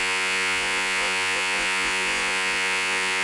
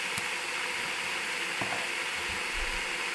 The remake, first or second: first